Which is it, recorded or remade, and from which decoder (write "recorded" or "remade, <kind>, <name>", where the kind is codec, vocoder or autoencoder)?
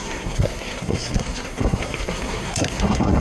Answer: remade, codec, SNAC